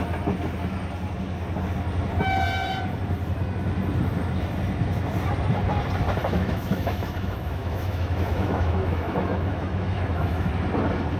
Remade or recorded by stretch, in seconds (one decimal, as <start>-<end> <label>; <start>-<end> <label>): 0.0-6.2 recorded; 6.2-10.5 remade; 10.5-11.2 recorded